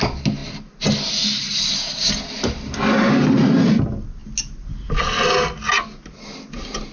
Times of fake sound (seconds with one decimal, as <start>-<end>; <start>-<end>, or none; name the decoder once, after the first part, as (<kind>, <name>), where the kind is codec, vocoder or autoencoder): none